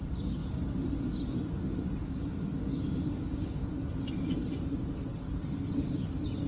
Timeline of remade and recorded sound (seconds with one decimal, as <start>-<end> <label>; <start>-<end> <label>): 0.0-2.0 recorded; 2.0-3.7 remade; 3.7-6.5 recorded